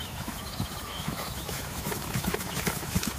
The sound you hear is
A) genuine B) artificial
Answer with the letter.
B